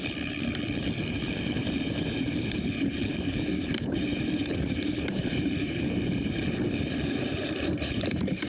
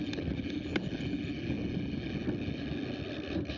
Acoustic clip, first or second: second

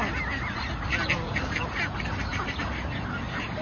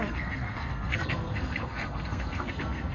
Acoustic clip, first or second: first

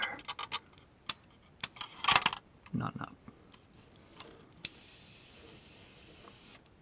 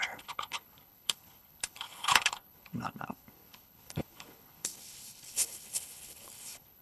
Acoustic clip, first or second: first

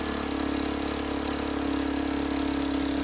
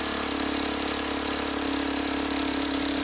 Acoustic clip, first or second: first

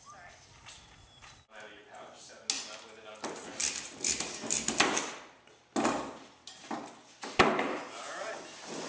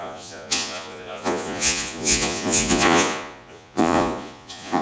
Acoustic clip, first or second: first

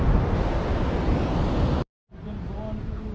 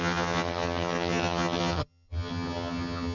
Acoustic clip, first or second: first